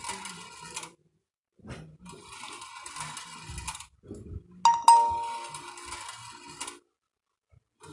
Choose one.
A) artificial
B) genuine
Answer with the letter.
B